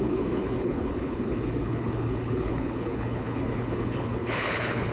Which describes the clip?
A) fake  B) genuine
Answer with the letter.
A